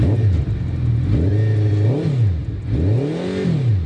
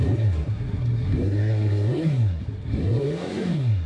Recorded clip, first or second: first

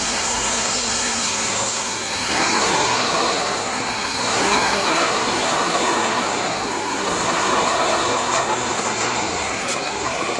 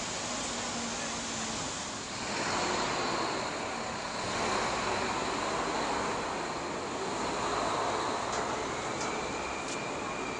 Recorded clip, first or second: second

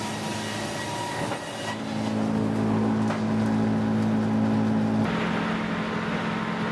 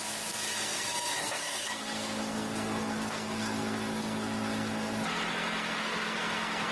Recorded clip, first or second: first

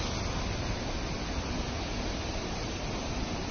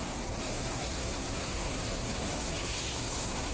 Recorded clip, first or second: first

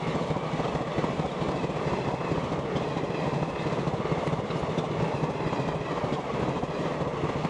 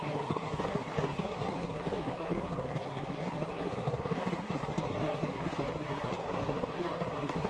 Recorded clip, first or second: first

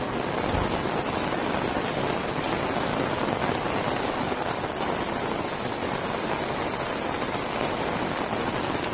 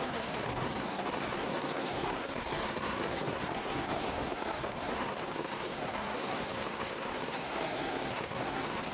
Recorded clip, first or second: first